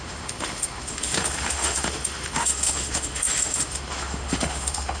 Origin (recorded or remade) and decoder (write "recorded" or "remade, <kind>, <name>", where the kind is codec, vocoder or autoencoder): remade, autoencoder, DAC-VAE